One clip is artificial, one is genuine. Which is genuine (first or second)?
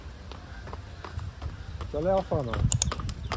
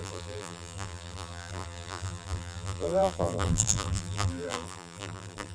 first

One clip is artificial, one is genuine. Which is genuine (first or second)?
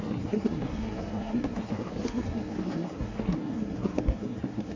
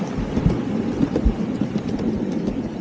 second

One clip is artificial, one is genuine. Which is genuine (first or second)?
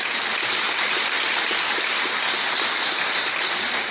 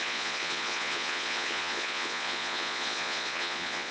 first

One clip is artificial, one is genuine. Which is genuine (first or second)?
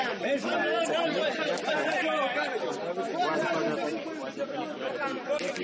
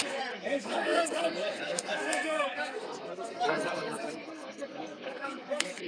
first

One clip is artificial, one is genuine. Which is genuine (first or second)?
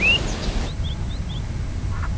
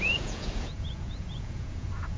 first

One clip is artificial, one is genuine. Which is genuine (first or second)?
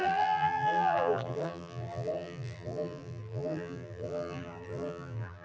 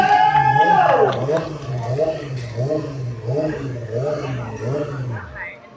second